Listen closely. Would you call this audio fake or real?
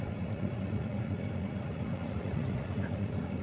fake